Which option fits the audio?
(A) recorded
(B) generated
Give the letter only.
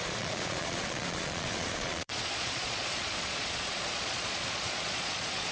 B